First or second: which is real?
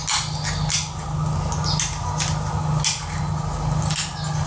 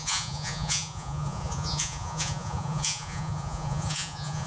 first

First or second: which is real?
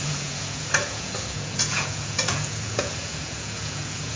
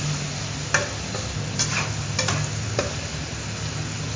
second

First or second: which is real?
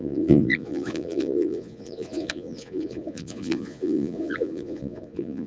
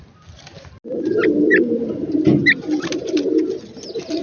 second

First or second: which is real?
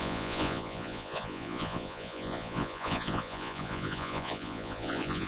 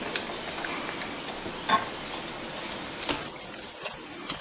second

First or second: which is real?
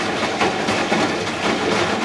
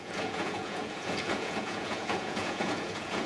first